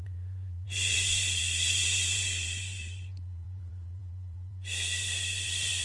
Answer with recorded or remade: remade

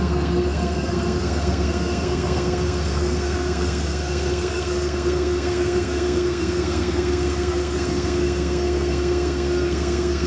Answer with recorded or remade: remade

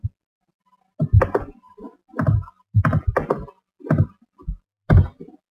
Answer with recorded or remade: recorded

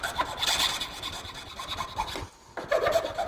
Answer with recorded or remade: recorded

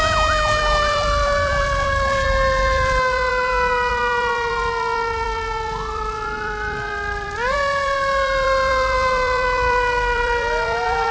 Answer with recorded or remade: remade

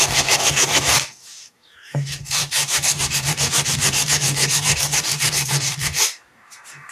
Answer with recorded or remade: remade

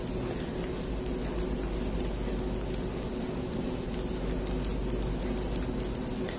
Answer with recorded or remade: recorded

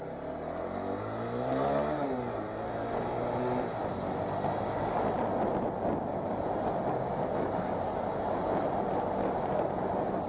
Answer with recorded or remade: recorded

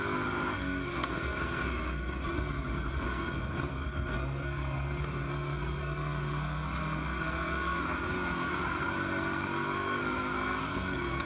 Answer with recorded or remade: remade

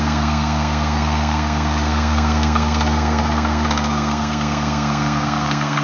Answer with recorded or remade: remade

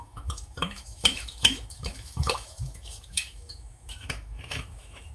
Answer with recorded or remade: remade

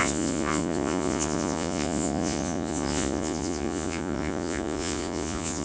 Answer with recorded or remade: remade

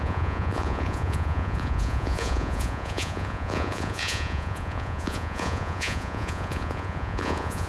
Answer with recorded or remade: remade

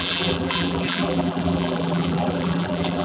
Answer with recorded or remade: remade